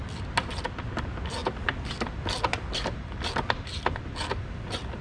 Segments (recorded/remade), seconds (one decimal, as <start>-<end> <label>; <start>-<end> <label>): 0.0-5.0 recorded